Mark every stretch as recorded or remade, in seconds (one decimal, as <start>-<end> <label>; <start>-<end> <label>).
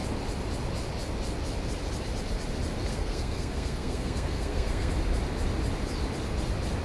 0.0-2.9 recorded; 2.9-4.9 remade; 4.9-6.8 recorded